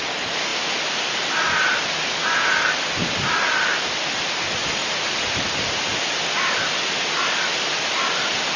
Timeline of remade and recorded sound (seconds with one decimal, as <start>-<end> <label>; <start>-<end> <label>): 0.0-8.6 recorded